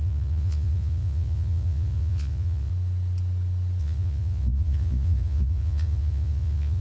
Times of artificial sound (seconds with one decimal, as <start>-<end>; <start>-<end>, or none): 0.0-2.7; 3.8-6.8